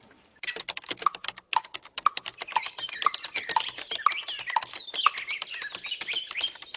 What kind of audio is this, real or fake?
real